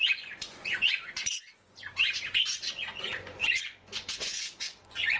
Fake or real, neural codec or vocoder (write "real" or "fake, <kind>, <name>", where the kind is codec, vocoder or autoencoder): fake, vocoder, Vocos